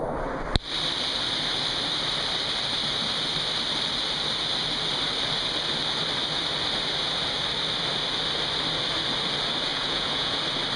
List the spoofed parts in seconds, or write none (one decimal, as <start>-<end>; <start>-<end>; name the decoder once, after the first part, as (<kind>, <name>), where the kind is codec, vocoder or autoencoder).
9.7-10.4 (vocoder, Vocos)